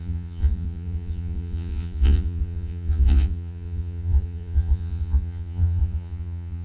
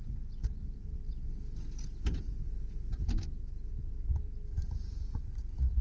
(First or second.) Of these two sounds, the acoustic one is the second